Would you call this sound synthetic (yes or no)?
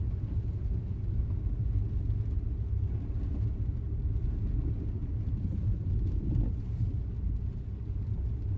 no